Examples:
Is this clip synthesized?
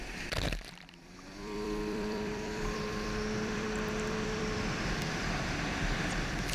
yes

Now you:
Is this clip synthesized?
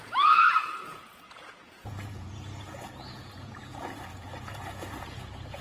yes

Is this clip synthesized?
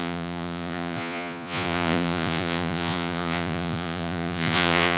yes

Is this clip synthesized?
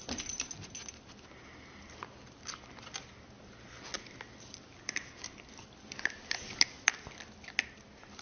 no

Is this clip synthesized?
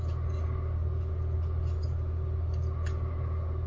no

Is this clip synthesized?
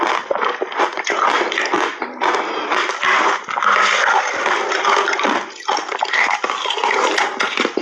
no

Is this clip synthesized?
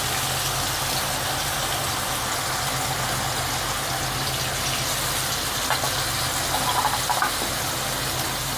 no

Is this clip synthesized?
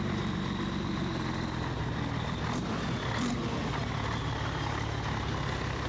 no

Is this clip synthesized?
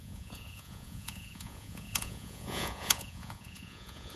yes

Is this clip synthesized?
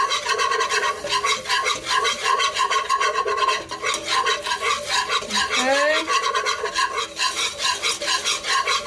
no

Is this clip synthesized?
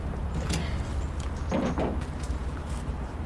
no